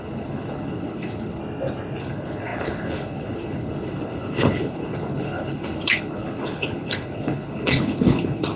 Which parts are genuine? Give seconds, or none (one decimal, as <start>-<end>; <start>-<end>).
1.4-2.0